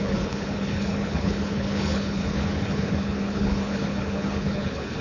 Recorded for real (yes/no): no